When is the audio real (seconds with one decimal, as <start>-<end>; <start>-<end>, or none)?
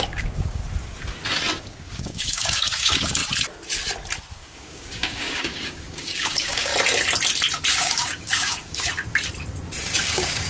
0.6-1.6; 3.2-4.3; 6.7-7.7; 8.9-10.0